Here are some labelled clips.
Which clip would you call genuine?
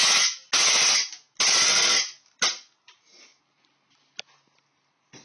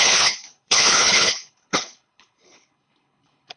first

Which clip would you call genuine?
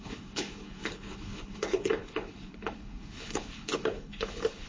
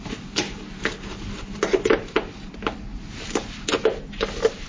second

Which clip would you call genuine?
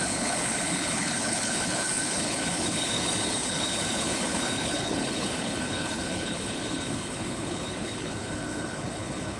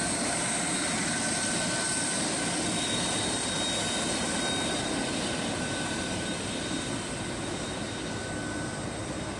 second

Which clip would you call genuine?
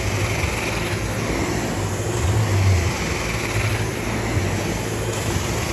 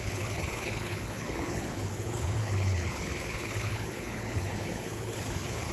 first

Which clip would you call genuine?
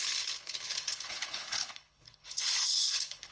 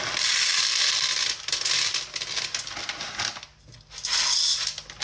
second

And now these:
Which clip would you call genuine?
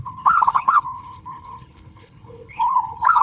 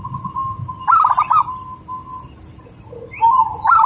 second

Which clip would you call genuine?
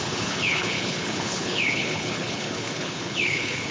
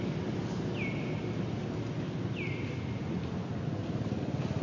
second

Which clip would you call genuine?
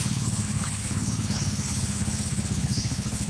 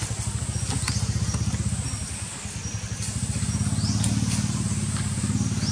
second